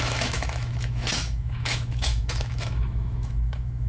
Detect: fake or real fake